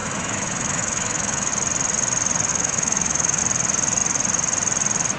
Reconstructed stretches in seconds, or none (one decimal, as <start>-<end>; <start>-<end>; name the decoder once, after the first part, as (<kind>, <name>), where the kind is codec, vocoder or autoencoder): 0.0-1.5 (autoencoder, DAC-VAE); 2.5-3.4